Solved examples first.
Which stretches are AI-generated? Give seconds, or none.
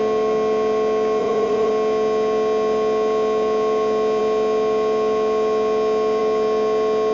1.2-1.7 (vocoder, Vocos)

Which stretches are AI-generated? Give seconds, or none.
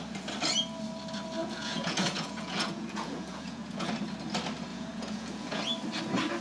1.4-3.9 (vocoder, Vocos); 4.7-5.6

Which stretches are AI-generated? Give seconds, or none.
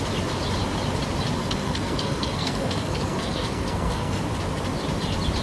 1.4-4.2 (codec, SNAC)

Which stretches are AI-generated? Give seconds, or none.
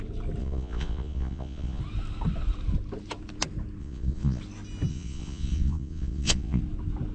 0.4-1.8 (vocoder, Vocos); 3.8-4.4; 4.9-6.6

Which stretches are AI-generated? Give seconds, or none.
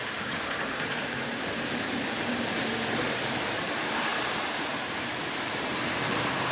0.0-6.5 (vocoder, BigVGAN v2)